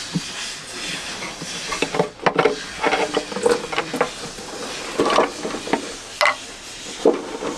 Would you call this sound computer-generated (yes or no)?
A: no